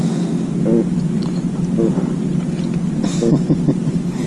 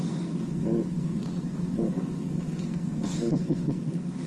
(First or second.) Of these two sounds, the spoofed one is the second